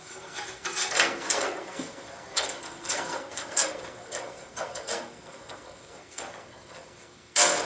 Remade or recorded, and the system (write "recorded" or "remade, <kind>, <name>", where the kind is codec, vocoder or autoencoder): remade, codec, SNAC